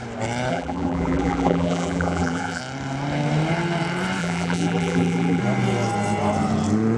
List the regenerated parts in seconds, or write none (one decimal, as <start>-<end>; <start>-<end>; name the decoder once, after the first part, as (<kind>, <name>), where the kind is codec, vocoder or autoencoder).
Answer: 0.5-2.6 (vocoder, BigVGAN v2); 4.2-5.4